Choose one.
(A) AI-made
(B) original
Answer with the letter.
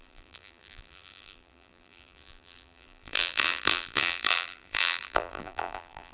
A